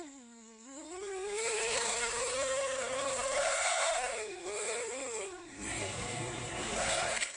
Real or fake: fake